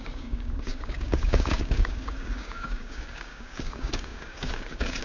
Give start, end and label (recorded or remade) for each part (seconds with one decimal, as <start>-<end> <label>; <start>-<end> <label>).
0.0-5.0 remade

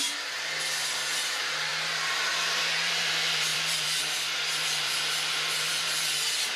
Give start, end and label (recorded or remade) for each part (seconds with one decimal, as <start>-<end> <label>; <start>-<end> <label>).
0.0-6.6 remade